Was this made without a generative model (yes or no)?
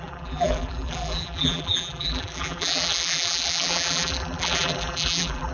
no